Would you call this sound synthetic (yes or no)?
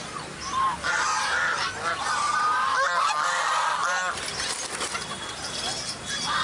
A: no